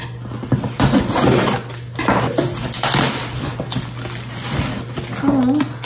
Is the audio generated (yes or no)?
no